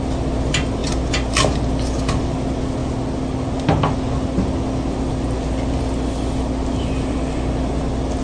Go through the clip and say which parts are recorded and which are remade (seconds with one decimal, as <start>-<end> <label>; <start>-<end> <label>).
0.0-8.2 recorded